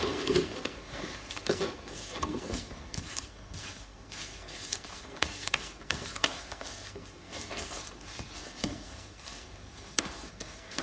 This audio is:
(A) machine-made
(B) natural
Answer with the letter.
A